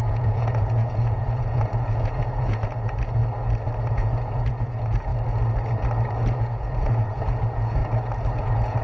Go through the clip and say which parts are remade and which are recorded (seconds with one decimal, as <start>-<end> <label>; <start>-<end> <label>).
0.0-3.2 remade; 3.2-3.9 recorded; 3.9-5.1 remade; 5.1-6.2 recorded; 6.2-7.8 remade; 7.8-8.4 recorded; 8.4-8.8 remade

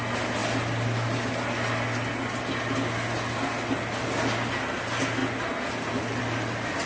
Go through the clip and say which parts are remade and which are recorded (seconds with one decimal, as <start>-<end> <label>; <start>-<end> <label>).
0.0-6.9 recorded

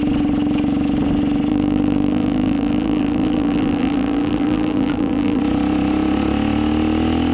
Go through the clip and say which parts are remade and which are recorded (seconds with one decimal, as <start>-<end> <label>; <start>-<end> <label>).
0.0-1.5 recorded; 1.5-5.4 remade; 5.4-7.3 recorded

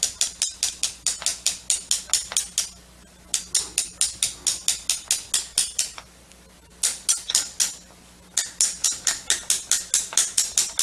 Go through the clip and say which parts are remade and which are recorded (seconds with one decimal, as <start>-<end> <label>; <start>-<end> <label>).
0.0-10.8 recorded

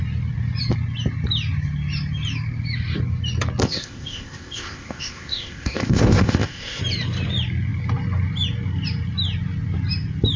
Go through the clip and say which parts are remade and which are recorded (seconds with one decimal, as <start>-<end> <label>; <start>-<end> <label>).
0.0-3.6 recorded; 3.6-6.8 remade; 6.8-10.4 recorded

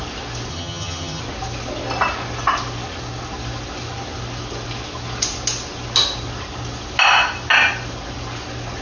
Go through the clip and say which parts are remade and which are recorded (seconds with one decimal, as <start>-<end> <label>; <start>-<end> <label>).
0.0-0.5 recorded; 0.5-1.2 remade; 1.2-8.8 recorded

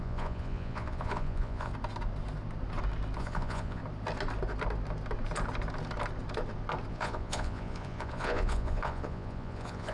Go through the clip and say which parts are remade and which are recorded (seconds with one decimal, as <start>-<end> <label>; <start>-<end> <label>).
0.0-1.7 remade; 1.7-3.2 recorded; 3.2-3.8 remade; 3.8-6.9 recorded; 6.9-9.9 remade

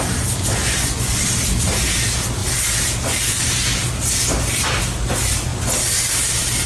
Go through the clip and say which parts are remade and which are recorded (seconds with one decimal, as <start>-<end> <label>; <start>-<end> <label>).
0.0-0.6 recorded; 0.6-1.2 remade; 1.2-6.7 recorded